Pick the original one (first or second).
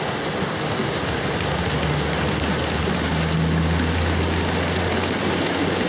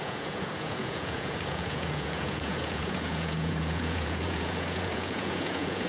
first